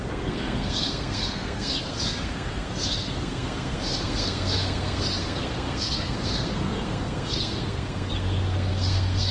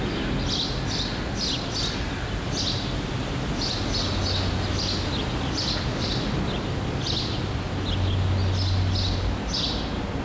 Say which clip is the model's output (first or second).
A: first